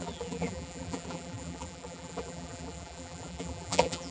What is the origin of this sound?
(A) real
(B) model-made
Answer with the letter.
B